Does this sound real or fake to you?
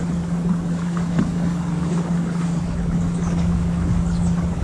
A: fake